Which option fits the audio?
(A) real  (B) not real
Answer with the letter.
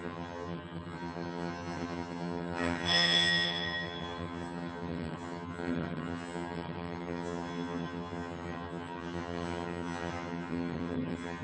B